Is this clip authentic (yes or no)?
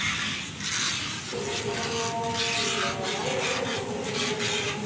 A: yes